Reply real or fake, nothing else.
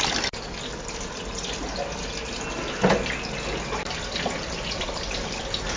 real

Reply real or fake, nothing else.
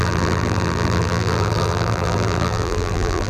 fake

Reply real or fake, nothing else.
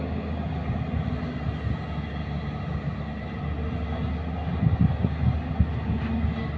real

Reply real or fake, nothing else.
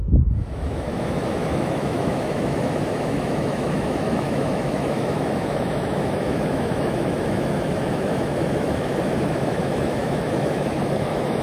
fake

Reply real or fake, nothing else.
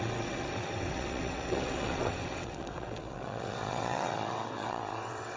fake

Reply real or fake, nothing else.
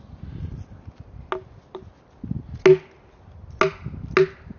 real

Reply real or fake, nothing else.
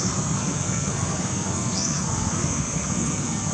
fake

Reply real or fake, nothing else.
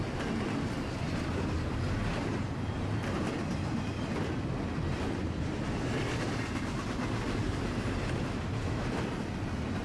real